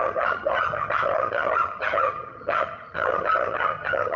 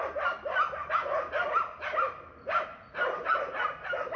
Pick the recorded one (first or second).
second